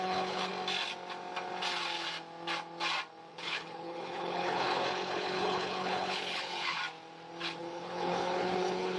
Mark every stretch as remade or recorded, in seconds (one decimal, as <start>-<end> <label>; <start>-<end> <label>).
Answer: 0.0-0.5 remade; 0.5-3.3 recorded; 3.3-6.8 remade; 6.8-7.6 recorded; 7.6-9.0 remade